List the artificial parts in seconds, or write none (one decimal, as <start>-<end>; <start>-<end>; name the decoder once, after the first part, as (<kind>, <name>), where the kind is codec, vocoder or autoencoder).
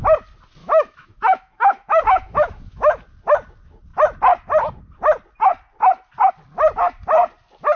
0.6-3.0 (autoencoder, DAC-VAE)